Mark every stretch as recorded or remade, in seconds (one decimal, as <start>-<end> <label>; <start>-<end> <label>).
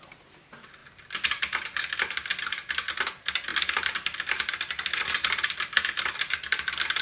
0.0-0.8 remade; 0.8-1.8 recorded; 1.8-2.3 remade; 2.3-3.1 recorded; 3.1-7.0 remade